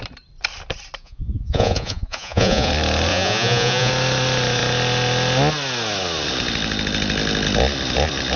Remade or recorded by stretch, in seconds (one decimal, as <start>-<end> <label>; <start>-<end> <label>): 0.0-1.0 recorded; 1.0-2.7 remade; 2.7-3.1 recorded; 3.1-3.9 remade; 3.9-8.4 recorded